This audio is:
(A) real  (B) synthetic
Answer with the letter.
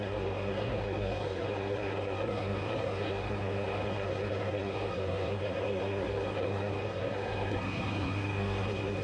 B